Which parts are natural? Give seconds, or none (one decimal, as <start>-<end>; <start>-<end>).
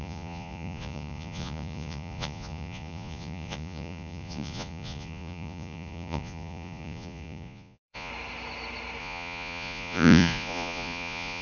8.1-9.0